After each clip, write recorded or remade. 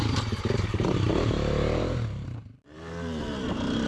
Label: remade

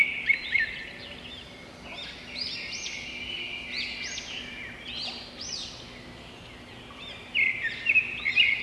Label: recorded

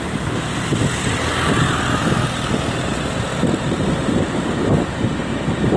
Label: recorded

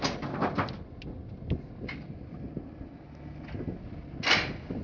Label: recorded